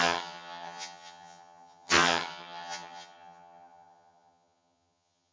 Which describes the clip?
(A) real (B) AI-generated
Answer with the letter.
B